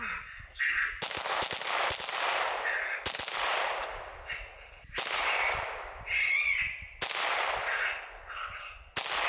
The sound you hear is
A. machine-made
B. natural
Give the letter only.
B